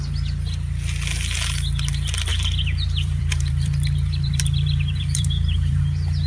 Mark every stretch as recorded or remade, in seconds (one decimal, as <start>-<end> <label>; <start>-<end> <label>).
0.0-2.3 recorded; 2.3-5.8 remade; 5.8-6.3 recorded